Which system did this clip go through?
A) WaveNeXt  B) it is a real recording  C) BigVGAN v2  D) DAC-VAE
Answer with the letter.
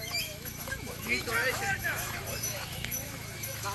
D